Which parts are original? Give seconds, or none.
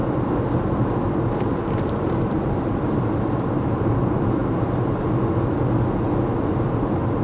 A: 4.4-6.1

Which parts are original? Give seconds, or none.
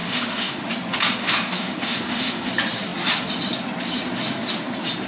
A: 0.7-1.2; 2.5-5.1